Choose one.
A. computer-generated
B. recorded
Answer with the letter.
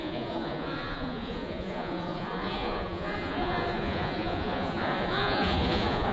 A